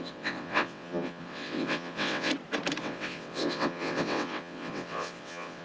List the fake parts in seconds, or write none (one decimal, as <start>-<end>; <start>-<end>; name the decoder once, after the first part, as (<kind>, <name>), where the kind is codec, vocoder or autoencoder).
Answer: 0.0-2.3 (vocoder, WaveNeXt); 2.8-5.6